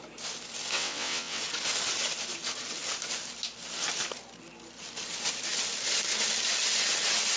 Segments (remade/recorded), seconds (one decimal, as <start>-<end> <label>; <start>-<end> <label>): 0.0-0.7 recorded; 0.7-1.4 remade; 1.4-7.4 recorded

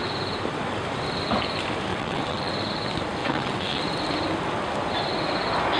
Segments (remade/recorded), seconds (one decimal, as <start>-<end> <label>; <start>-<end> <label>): 0.0-1.9 recorded; 1.9-2.5 remade; 2.5-3.2 recorded; 3.2-3.8 remade; 3.8-5.8 recorded

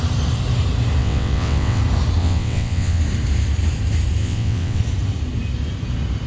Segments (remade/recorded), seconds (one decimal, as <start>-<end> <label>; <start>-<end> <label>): 0.0-1.0 recorded; 1.0-1.8 remade; 1.8-2.2 recorded; 2.2-3.0 remade; 3.0-4.2 recorded; 4.2-4.8 remade; 4.8-6.3 recorded